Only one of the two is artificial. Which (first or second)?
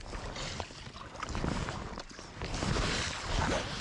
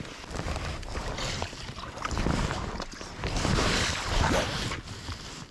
second